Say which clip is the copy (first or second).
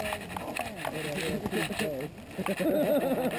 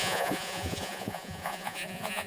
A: second